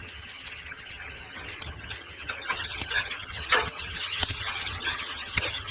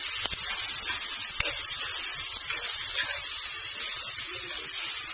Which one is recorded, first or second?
second